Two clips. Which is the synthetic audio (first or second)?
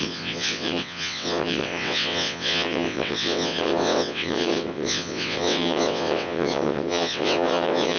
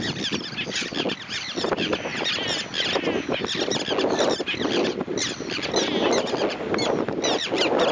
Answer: first